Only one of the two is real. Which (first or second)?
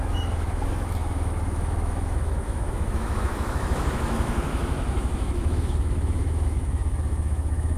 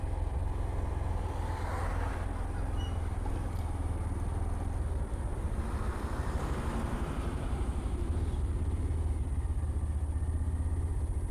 second